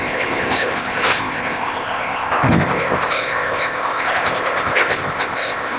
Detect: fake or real fake